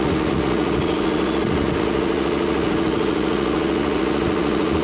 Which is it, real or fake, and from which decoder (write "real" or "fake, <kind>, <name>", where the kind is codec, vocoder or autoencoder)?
fake, vocoder, Vocos